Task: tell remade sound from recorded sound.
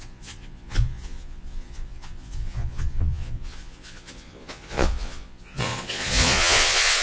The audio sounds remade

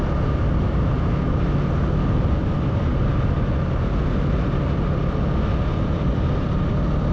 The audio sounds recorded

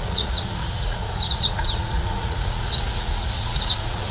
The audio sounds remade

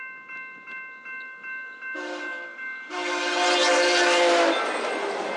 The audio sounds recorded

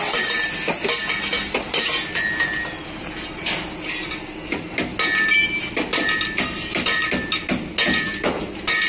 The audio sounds recorded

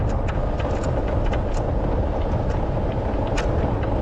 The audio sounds recorded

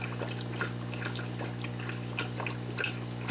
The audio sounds recorded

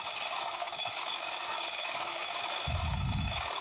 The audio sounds remade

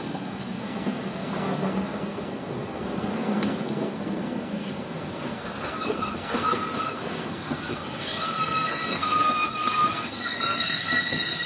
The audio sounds remade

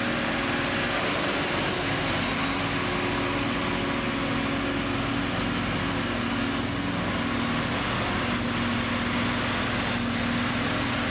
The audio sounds recorded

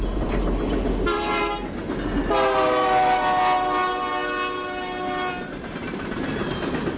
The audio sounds recorded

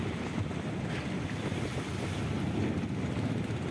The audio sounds recorded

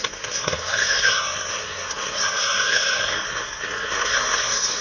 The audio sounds remade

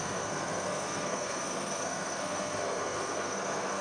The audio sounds remade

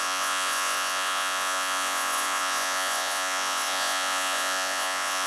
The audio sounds remade